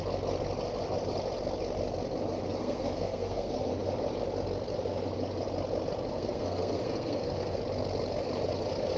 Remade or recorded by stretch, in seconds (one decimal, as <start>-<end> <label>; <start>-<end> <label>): 0.0-2.6 recorded; 2.6-3.7 remade; 3.7-6.1 recorded; 6.1-7.6 remade; 7.6-9.0 recorded